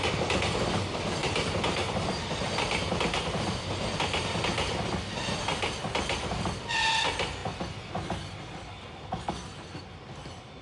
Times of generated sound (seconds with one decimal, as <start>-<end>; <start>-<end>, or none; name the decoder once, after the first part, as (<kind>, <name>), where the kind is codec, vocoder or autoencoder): 1.2-2.5 (vocoder, BigVGAN v2)